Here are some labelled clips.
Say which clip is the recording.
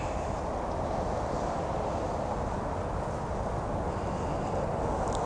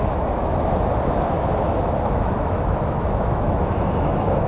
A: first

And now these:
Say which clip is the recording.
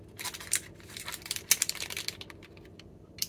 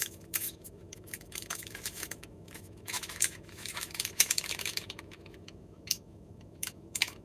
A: first